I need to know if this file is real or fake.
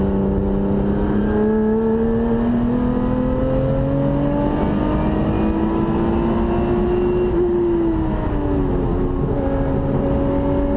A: real